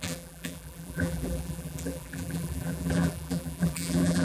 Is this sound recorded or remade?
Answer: remade